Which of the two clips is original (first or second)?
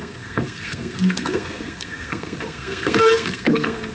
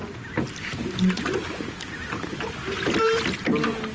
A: second